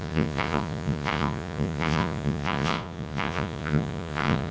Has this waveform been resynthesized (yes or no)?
yes